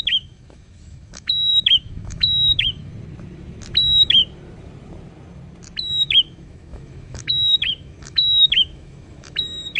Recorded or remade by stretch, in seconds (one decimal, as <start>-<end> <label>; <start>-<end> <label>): 0.0-2.9 remade; 2.9-3.8 recorded; 3.8-4.2 remade; 4.2-5.9 recorded; 5.9-9.8 remade